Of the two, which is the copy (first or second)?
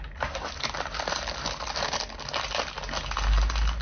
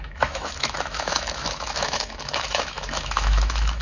second